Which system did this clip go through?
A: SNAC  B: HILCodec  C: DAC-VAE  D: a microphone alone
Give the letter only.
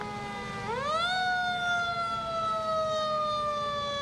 D